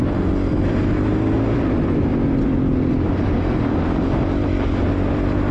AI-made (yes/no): no